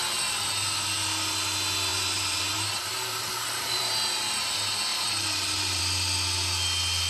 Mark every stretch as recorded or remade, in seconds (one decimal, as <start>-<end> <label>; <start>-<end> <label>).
0.0-1.9 recorded; 1.9-3.9 remade; 3.9-4.9 recorded; 4.9-5.8 remade; 5.8-7.1 recorded